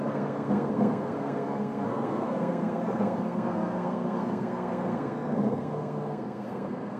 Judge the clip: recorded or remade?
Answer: remade